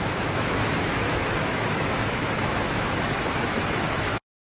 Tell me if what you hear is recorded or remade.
remade